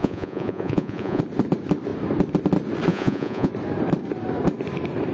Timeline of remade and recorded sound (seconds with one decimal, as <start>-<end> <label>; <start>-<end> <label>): 0.0-1.2 remade; 1.2-2.9 recorded; 2.9-3.5 remade; 3.5-5.1 recorded